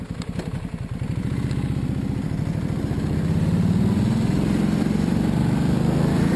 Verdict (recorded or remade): remade